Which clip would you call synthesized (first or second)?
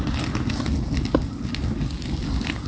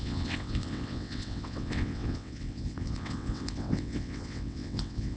second